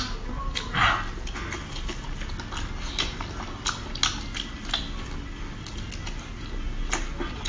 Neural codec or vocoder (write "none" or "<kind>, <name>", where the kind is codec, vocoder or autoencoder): none